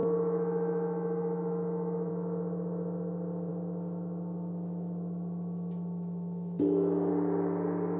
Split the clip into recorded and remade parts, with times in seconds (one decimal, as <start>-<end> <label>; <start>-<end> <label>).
0.0-2.1 remade; 2.1-8.0 recorded